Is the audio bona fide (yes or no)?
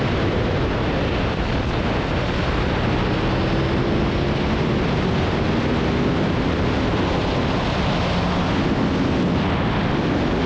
yes